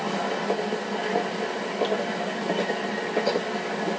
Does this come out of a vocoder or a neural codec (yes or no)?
no